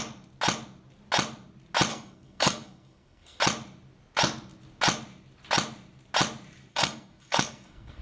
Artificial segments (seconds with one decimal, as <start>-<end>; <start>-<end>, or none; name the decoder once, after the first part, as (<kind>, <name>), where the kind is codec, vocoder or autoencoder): 1.9-3.4 (codec, SNAC); 6.7-8.0